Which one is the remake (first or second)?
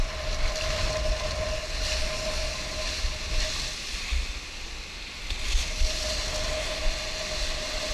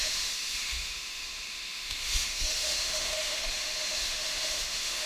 second